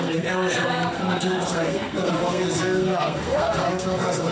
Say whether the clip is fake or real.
fake